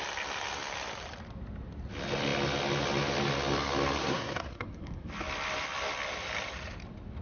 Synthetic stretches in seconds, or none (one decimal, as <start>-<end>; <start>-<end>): 4.0-5.1